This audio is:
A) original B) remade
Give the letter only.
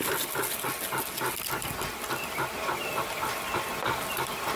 A